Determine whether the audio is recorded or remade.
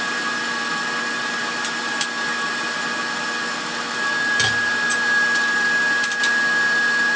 recorded